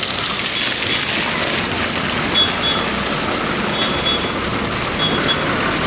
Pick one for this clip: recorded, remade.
recorded